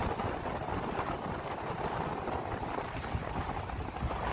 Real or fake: real